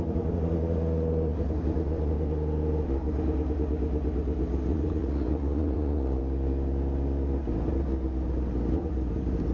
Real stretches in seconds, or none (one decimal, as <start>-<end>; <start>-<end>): 0.0-4.7; 6.2-9.5